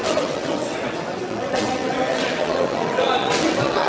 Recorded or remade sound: remade